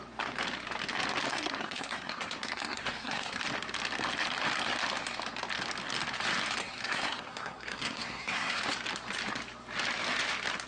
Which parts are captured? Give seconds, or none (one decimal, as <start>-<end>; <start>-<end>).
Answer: 0.0-1.3; 3.4-6.6; 8.6-10.7